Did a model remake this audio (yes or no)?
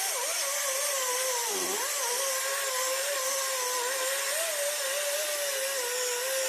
no